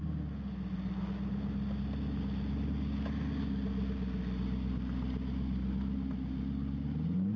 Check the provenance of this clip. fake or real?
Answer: real